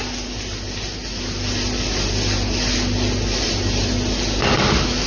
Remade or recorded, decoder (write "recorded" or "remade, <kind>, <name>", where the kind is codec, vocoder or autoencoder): recorded